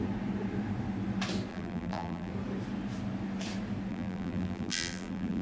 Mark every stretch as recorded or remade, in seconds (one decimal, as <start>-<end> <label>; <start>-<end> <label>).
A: 0.0-1.5 recorded; 1.5-2.3 remade; 2.3-3.9 recorded; 3.9-5.4 remade